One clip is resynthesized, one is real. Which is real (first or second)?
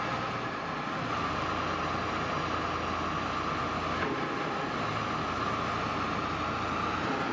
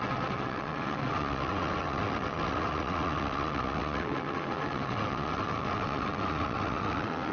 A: first